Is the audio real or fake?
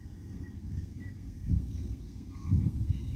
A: fake